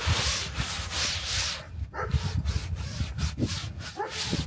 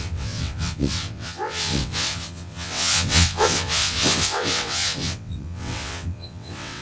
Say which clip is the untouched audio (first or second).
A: first